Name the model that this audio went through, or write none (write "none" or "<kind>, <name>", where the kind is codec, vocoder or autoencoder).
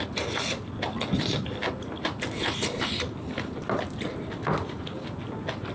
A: none